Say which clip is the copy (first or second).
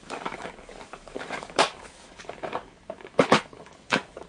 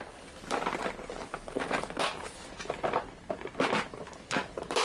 first